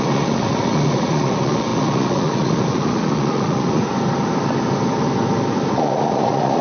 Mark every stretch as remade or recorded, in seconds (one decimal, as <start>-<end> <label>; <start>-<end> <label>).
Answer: 0.0-3.9 remade; 3.9-5.7 recorded; 5.7-6.6 remade